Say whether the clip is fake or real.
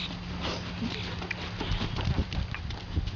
real